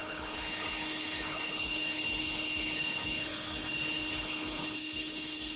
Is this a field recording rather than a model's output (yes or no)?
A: no